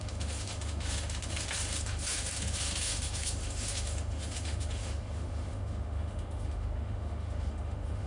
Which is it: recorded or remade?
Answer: remade